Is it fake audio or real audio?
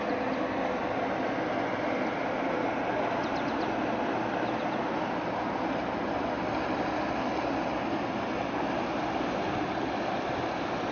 real